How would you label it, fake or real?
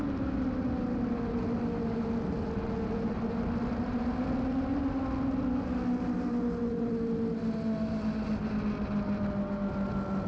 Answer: real